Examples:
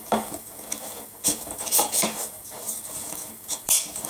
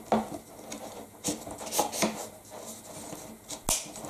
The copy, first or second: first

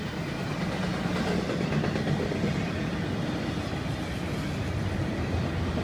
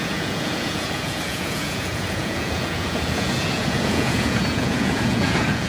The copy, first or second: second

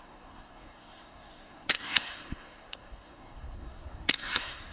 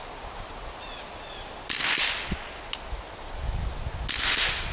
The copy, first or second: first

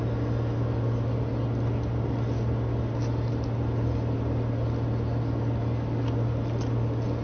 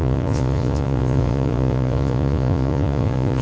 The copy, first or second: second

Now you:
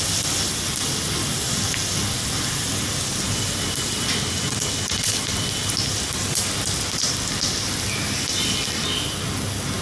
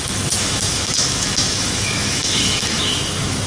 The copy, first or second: second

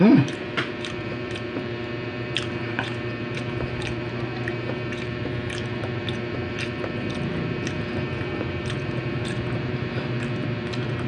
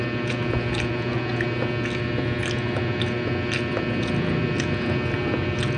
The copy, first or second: first